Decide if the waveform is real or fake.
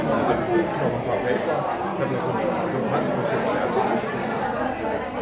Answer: real